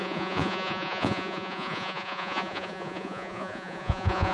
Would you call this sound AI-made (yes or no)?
yes